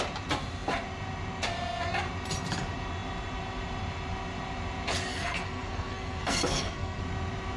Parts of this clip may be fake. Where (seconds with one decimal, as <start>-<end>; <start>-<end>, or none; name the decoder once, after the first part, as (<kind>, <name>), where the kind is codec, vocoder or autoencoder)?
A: 5.1-7.0 (codec, SNAC)